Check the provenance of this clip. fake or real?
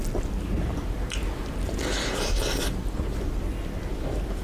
real